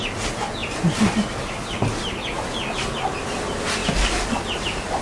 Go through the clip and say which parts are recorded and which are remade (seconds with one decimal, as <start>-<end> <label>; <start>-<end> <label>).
0.0-5.0 recorded

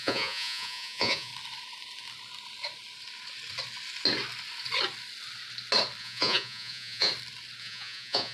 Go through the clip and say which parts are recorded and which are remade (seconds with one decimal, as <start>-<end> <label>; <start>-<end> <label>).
0.0-1.3 remade; 1.3-6.0 recorded; 6.0-7.1 remade; 7.1-7.6 recorded; 7.6-8.3 remade

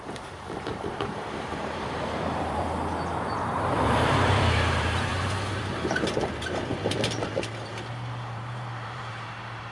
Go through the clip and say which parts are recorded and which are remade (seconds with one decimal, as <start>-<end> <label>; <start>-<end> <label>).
0.0-2.8 remade; 2.8-3.3 recorded; 3.3-5.1 remade; 5.1-5.6 recorded; 5.6-6.7 remade; 6.7-7.9 recorded; 7.9-9.7 remade

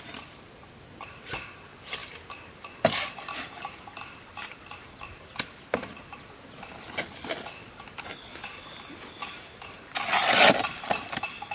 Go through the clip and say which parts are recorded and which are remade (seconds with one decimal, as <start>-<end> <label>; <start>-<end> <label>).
0.0-11.5 recorded

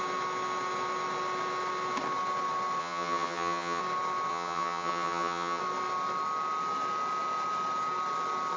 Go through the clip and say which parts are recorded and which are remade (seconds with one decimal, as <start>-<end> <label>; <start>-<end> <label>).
0.0-2.8 recorded; 2.8-3.8 remade; 3.8-4.3 recorded; 4.3-5.6 remade; 5.6-8.6 recorded

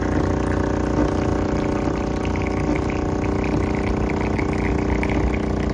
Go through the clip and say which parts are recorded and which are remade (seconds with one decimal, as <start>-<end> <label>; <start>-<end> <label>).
0.0-5.7 recorded

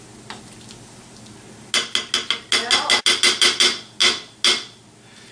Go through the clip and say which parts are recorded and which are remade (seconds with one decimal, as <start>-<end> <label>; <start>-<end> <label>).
0.0-5.3 recorded